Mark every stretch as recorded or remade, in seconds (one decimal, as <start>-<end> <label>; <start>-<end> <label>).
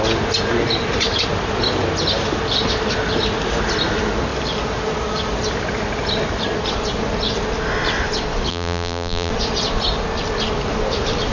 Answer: 0.0-8.5 recorded; 8.5-9.3 remade; 9.3-11.3 recorded